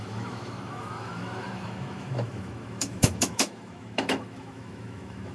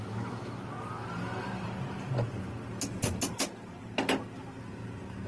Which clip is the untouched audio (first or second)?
second